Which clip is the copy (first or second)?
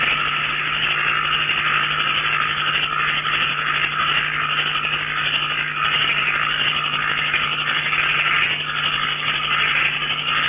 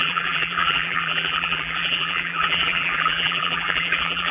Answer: second